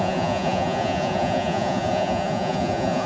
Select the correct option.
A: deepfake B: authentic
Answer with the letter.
A